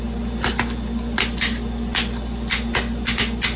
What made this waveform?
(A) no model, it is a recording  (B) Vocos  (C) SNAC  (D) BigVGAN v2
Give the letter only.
A